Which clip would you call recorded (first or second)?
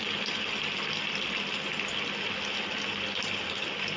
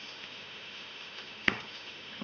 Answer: first